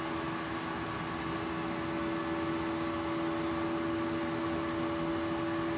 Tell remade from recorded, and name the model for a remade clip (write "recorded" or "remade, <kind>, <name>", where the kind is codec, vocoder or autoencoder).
recorded